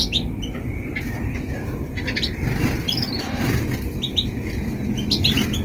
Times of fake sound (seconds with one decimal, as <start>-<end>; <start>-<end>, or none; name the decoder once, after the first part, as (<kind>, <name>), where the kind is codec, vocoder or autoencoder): none